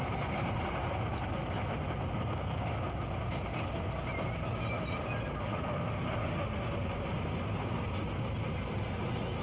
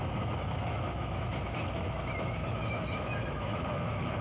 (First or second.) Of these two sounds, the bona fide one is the first